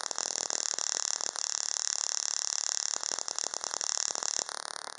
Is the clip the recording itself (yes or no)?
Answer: yes